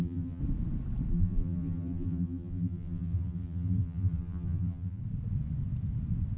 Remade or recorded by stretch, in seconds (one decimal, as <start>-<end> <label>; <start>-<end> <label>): 0.0-0.4 remade; 0.4-1.1 recorded; 1.1-5.0 remade; 5.0-6.4 recorded